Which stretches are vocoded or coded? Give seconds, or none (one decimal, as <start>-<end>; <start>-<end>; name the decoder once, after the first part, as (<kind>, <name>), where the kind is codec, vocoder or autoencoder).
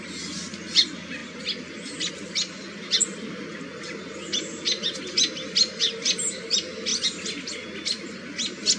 none